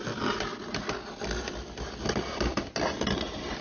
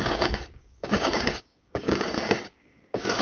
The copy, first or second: second